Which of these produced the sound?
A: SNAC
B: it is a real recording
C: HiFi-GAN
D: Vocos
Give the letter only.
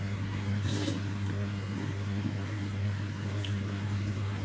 A